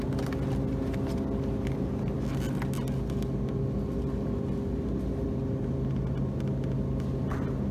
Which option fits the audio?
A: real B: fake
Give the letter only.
A